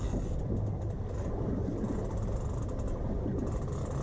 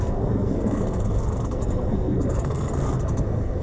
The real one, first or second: first